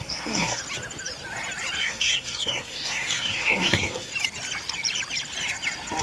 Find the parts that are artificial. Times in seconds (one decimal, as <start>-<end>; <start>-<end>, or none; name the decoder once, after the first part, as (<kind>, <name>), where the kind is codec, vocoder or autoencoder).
0.0-0.6 (codec, SNAC); 1.8-4.1

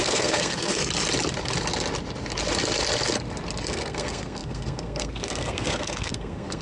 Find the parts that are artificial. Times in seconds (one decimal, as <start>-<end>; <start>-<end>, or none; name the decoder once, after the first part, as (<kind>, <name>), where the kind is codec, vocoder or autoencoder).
0.0-0.8 (codec, SNAC); 3.7-6.6

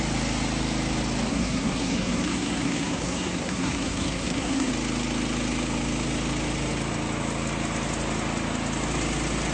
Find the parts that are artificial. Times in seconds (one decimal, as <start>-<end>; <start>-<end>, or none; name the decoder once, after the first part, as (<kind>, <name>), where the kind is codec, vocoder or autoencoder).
1.3-4.7 (codec, SNAC)

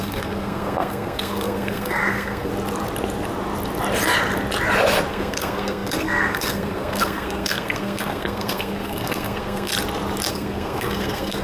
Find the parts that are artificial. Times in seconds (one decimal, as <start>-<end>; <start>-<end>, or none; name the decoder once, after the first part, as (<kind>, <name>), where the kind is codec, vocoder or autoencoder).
0.0-2.5 (codec, SNAC); 5.1-9.7; 10.3-11.4

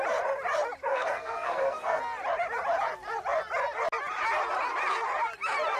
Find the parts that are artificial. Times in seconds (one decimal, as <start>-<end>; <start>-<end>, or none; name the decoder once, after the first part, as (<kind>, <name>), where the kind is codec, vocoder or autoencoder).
0.9-2.0 (codec, SNAC)

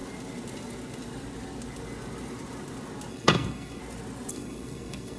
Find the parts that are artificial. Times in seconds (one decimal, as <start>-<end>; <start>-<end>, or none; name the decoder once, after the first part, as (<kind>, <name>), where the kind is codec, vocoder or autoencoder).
3.1-3.8 (codec, SNAC); 4.3-5.2

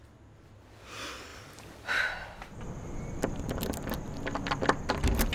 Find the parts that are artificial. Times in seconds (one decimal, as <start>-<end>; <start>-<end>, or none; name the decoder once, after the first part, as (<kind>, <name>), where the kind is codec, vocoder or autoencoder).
none